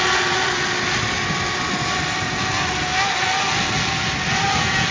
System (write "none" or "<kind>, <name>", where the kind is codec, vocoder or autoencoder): none